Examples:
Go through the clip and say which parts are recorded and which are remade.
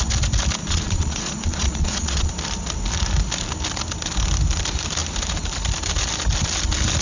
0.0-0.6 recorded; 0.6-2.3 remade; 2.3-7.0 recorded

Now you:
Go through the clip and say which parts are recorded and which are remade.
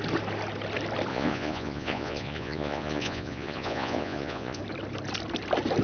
0.0-1.1 recorded; 1.1-4.6 remade; 4.6-5.8 recorded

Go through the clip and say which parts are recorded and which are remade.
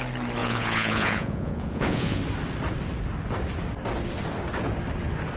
0.0-0.4 recorded; 0.4-2.2 remade; 2.2-5.4 recorded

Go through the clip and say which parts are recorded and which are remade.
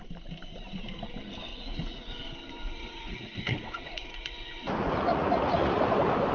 0.0-1.5 recorded; 1.5-2.1 remade; 2.1-2.6 recorded; 2.6-5.8 remade; 5.8-6.3 recorded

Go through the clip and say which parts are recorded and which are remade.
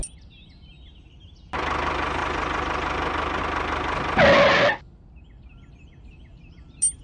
0.0-7.0 recorded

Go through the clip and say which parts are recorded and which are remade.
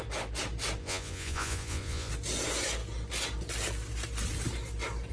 0.0-0.8 recorded; 0.8-2.1 remade; 2.1-5.1 recorded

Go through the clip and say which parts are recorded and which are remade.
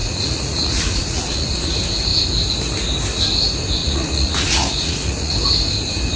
0.0-1.7 remade; 1.7-3.8 recorded; 3.8-5.3 remade; 5.3-6.2 recorded